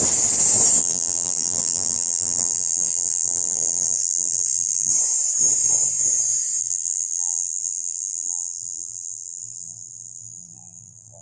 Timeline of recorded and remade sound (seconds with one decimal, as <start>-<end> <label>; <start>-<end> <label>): 0.0-0.8 recorded; 0.8-4.9 remade; 4.9-6.6 recorded; 6.6-11.2 remade